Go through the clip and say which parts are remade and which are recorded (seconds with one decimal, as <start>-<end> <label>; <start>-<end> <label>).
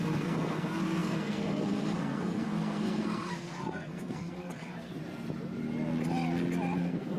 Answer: 0.0-4.9 remade; 4.9-6.8 recorded; 6.8-7.2 remade